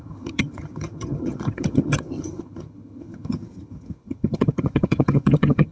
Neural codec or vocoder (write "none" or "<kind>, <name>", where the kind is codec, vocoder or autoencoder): vocoder, HiFi-GAN